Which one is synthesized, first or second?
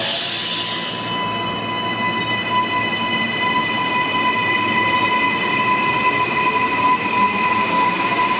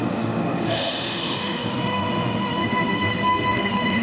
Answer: second